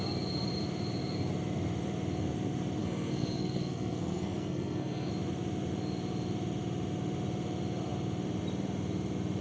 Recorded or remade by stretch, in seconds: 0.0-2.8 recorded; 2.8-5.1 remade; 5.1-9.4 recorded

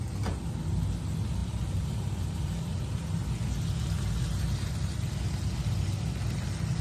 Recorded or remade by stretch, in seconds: 0.0-1.4 recorded; 1.4-2.8 remade; 2.8-6.8 recorded

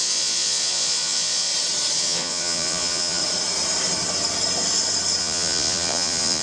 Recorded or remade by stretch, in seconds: 0.0-1.5 remade; 1.5-2.0 recorded; 2.0-3.2 remade; 3.2-5.2 recorded; 5.2-6.4 remade

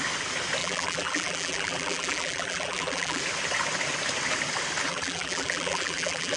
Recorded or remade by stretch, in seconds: 0.0-0.6 recorded; 0.6-3.2 remade; 3.2-4.9 recorded; 4.9-6.4 remade

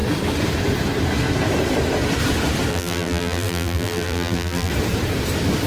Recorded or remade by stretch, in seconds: 0.0-2.7 recorded; 2.7-4.7 remade; 4.7-5.7 recorded